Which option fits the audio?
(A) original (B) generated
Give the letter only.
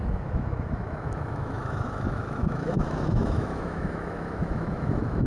B